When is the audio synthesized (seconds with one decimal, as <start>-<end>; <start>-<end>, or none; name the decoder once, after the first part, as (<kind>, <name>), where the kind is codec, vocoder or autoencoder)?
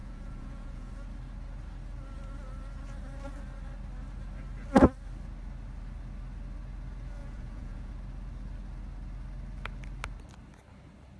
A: 0.0-0.9 (vocoder, Vocos); 7.2-7.9